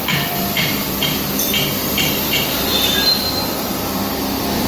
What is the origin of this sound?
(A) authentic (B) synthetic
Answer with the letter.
B